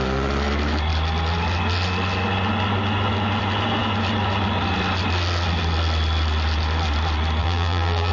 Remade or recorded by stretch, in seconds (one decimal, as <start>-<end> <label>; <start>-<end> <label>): 0.0-7.4 recorded; 7.4-8.1 remade